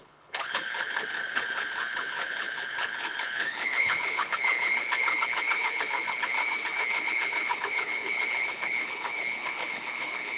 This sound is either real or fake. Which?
fake